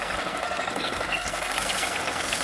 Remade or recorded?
remade